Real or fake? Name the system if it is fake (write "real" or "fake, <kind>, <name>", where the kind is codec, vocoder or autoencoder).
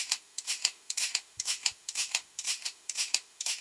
fake, autoencoder, DAC-VAE